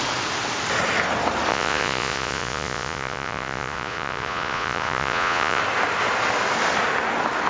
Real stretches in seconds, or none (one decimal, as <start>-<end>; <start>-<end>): 0.0-1.5; 5.6-7.5